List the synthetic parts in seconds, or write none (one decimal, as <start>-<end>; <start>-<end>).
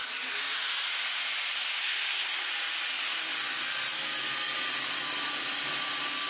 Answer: 1.8-2.5